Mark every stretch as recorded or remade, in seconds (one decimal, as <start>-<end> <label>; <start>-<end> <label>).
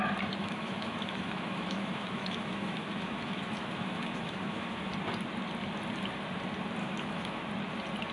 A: 0.0-0.4 recorded; 0.4-4.9 remade; 4.9-6.8 recorded; 6.8-7.4 remade; 7.4-8.1 recorded